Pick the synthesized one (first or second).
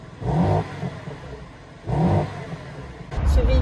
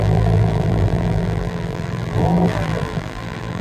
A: second